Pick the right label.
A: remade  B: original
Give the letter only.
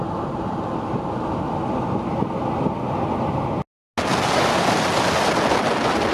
B